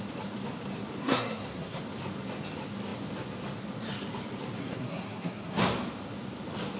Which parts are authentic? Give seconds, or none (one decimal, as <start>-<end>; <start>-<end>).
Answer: 0.0-1.0; 1.8-4.6; 5.6-6.8